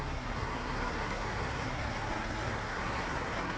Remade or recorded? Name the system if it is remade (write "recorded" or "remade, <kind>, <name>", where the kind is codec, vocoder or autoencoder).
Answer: remade, codec, SNAC